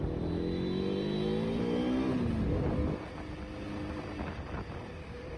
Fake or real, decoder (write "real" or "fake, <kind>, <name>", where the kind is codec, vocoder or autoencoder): real